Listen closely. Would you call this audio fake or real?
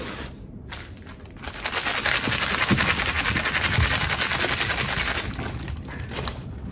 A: real